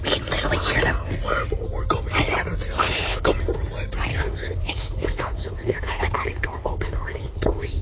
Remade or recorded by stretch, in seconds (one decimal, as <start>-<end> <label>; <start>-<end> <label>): 0.0-2.8 recorded; 2.8-3.3 remade; 3.3-4.1 recorded; 4.1-7.8 remade